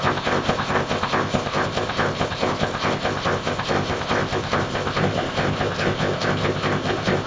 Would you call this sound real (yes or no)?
no